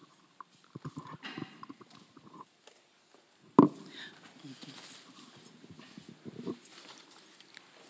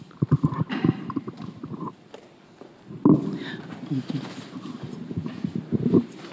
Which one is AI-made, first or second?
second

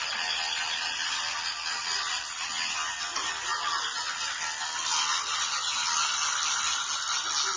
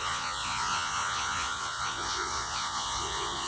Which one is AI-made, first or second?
second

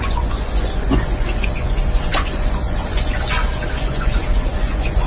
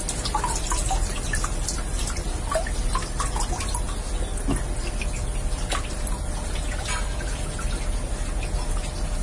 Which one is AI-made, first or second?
first